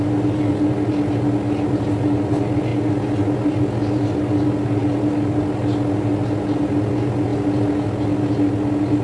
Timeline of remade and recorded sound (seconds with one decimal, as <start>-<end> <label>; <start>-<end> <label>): 0.0-9.0 recorded